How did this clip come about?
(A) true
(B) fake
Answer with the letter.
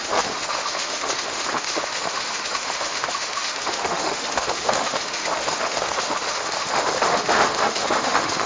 B